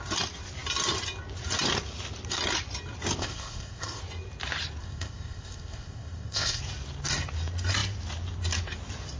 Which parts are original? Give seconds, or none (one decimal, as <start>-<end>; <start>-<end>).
0.0-3.2; 4.0-4.8; 6.6-9.2